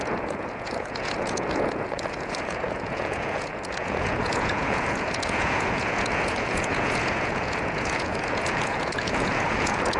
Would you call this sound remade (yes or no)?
yes